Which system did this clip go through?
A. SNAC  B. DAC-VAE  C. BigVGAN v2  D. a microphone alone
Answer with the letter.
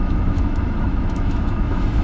B